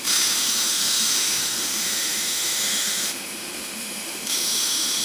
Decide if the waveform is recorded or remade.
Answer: remade